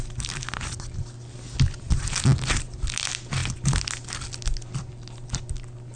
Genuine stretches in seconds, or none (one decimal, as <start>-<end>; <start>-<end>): 0.0-6.0

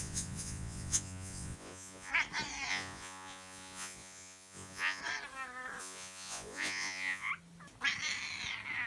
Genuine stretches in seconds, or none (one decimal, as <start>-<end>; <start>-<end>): 2.1-2.7; 5.0-5.8; 7.3-8.9

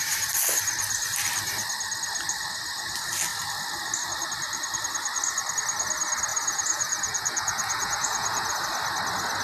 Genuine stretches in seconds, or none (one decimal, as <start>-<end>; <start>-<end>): 0.0-6.3; 8.6-9.4

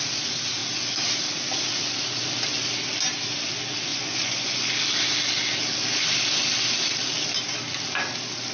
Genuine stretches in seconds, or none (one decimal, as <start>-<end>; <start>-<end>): 0.0-3.9; 4.7-8.5